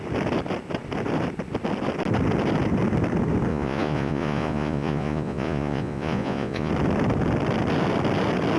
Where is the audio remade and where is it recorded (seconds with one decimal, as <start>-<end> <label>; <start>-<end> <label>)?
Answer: 0.0-3.5 recorded; 3.5-6.7 remade; 6.7-8.6 recorded